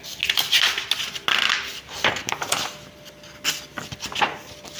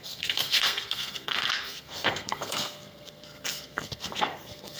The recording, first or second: first